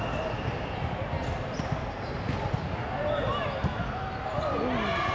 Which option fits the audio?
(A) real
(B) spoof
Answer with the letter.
A